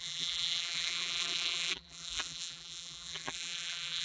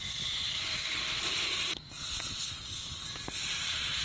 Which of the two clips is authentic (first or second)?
second